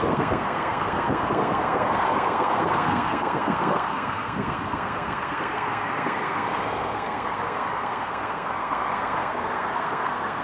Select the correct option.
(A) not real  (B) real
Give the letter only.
A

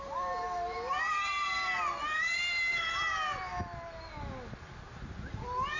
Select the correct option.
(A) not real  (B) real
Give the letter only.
B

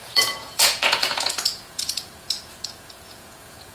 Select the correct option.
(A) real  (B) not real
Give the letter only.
B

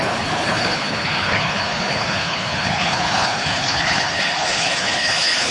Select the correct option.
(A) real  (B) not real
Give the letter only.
B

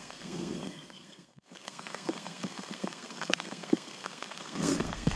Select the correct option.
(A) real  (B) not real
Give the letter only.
B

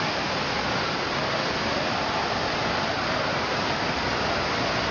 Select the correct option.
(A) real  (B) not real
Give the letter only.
A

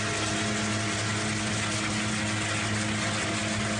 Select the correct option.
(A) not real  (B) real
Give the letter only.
B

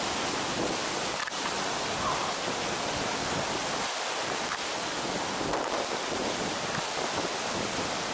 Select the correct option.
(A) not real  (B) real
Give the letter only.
B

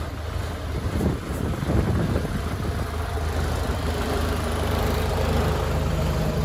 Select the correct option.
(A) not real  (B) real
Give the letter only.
B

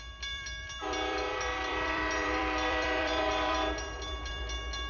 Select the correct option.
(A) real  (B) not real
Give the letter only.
B